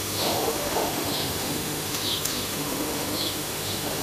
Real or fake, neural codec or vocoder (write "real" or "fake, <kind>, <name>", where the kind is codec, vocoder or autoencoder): fake, autoencoder, DAC-VAE